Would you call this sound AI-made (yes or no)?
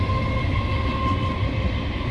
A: no